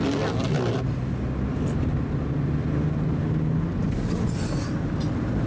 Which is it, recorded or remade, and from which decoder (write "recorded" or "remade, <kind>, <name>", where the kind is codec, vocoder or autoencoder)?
recorded